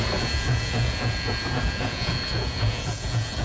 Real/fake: fake